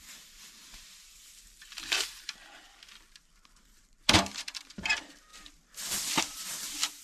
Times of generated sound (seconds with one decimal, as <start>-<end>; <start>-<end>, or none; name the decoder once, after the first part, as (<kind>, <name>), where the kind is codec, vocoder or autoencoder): 0.0-5.3 (vocoder, BigVGAN v2); 6.2-7.0